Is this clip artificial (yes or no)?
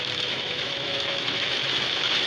yes